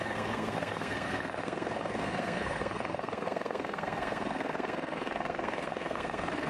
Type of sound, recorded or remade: remade